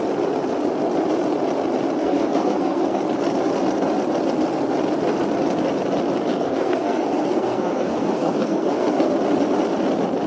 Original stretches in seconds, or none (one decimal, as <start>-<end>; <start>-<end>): 0.0-2.0; 3.0-6.3; 9.1-10.3